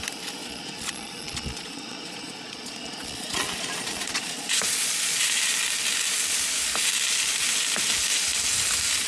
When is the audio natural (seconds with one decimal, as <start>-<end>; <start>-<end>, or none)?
0.0-0.4; 5.2-9.1